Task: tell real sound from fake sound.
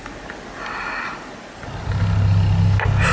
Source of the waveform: real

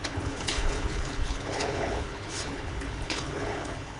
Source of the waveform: fake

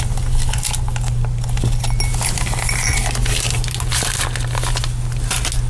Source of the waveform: real